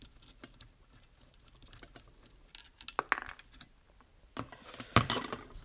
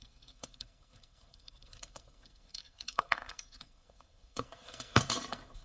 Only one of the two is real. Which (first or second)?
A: first